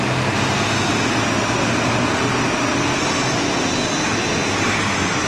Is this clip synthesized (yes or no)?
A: no